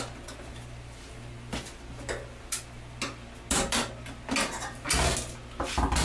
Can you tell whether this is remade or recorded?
recorded